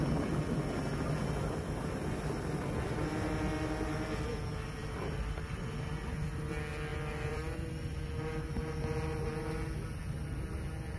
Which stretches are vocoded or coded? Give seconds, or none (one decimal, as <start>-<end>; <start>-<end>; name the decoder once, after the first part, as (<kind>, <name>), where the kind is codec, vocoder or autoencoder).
4.8-6.5 (vocoder, BigVGAN v2); 6.9-7.7